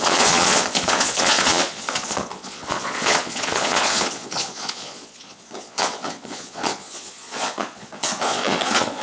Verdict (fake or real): fake